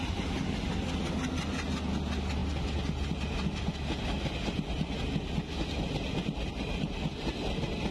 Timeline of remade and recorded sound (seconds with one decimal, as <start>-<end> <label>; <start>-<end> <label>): 0.0-7.9 recorded